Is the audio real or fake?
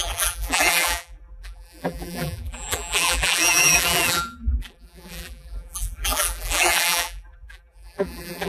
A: fake